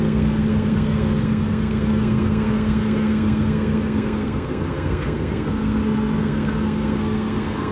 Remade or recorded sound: remade